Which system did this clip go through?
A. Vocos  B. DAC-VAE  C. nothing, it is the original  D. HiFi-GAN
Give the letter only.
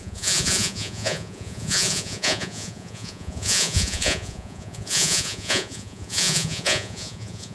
A